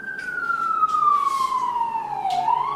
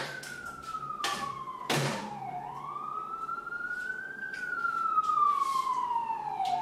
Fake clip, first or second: second